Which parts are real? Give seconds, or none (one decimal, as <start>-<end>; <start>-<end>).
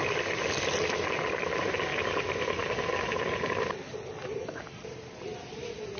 0.0-6.0